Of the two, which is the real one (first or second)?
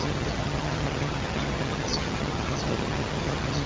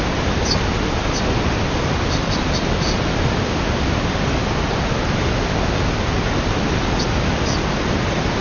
second